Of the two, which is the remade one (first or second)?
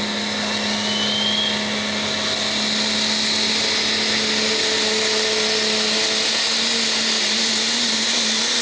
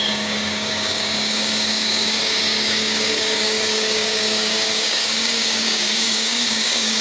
second